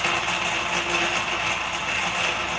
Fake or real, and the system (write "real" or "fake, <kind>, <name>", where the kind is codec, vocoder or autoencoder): real